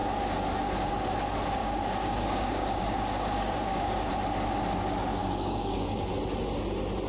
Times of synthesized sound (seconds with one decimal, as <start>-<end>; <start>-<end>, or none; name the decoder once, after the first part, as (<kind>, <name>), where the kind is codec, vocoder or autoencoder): 1.6-4.1 (codec, DAC); 5.2-6.1

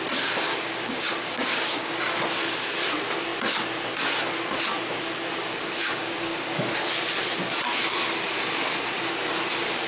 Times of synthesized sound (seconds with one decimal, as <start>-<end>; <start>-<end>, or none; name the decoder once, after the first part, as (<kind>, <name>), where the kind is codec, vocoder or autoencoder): 0.5-2.0 (codec, DAC); 5.4-6.7

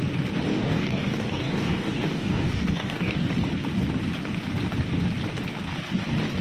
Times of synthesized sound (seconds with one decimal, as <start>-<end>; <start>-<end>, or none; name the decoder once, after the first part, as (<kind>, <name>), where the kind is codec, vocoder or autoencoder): 0.5-3.3 (codec, DAC)

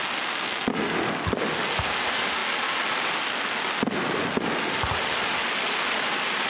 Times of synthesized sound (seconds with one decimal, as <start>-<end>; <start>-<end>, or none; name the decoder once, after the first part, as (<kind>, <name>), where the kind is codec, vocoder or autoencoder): none